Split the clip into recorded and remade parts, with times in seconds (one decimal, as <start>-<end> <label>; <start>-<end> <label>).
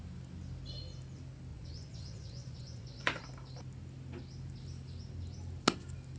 0.0-1.5 recorded; 1.5-3.2 remade; 3.2-6.2 recorded